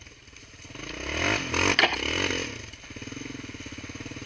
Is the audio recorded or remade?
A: recorded